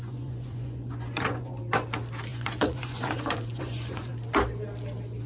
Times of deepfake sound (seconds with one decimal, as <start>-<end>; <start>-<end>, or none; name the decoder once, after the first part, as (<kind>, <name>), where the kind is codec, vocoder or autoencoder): 0.0-1.6 (vocoder, Vocos); 2.3-4.1